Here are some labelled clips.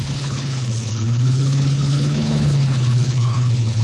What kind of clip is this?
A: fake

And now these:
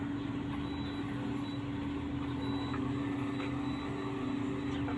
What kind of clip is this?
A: real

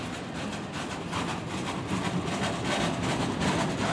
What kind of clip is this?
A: real